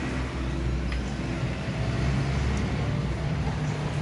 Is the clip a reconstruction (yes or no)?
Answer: no